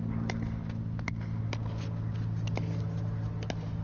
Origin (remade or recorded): recorded